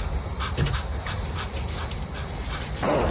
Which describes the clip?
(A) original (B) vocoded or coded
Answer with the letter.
B